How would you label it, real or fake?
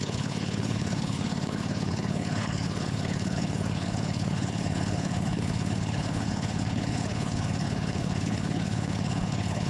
fake